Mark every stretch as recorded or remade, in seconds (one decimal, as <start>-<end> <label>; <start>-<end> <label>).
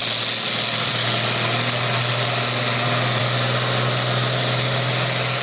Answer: 0.0-5.4 recorded